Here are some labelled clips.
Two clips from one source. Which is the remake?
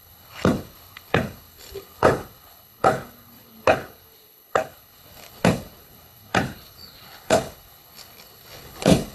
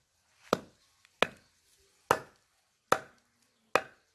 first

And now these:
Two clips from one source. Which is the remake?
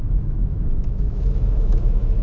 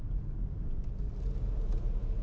first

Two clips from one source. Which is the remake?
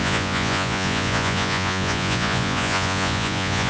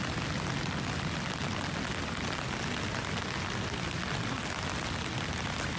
first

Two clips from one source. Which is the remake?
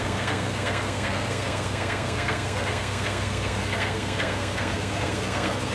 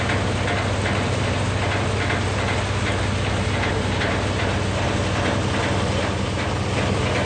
first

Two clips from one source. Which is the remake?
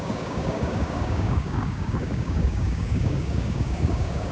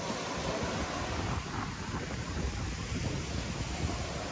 first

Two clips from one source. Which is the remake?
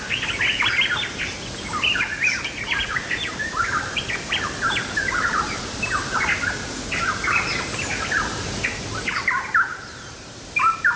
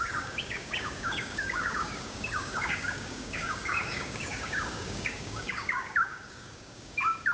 second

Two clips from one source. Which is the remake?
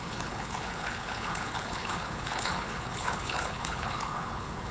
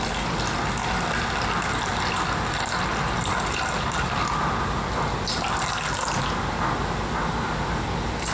first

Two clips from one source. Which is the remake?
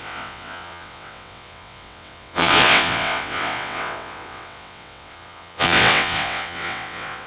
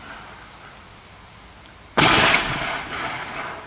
first